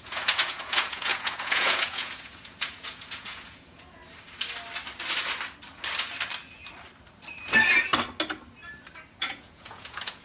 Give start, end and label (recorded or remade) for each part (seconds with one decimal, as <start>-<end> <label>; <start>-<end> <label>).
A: 0.0-4.0 remade; 4.0-9.2 recorded; 9.2-10.2 remade